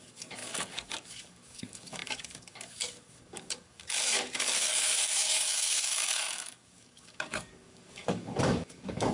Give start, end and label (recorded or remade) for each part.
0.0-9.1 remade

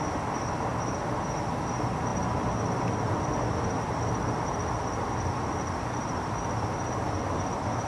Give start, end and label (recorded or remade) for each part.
0.0-7.9 recorded

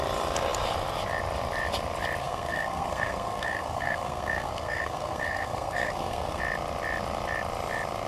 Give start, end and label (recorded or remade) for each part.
0.0-2.2 recorded; 2.2-6.4 remade; 6.4-8.1 recorded

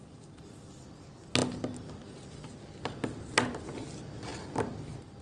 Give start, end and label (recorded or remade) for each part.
0.0-5.2 recorded